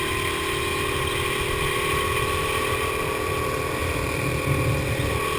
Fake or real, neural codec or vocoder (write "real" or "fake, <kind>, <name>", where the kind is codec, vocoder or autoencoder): real